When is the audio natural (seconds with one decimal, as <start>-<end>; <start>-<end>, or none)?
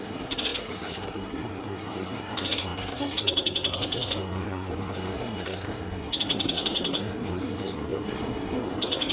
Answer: none